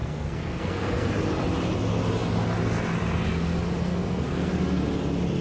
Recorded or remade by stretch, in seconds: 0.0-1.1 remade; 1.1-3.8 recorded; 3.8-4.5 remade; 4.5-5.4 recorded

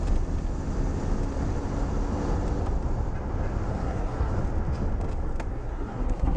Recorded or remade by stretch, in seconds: 0.0-3.7 recorded; 3.7-4.3 remade; 4.3-5.5 recorded; 5.5-6.4 remade

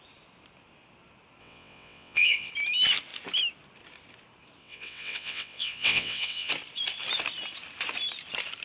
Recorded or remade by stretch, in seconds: 0.0-1.4 recorded; 1.4-2.5 remade; 2.5-4.6 recorded; 4.6-6.5 remade; 6.5-8.6 recorded

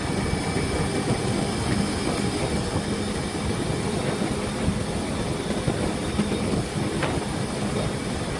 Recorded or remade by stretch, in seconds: 0.0-8.4 recorded